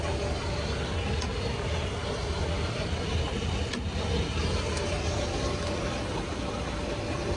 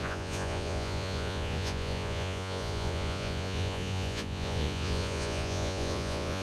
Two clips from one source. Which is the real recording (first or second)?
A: first